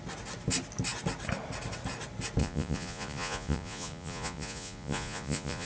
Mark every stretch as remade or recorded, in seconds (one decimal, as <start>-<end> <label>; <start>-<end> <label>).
0.0-2.4 recorded; 2.4-5.7 remade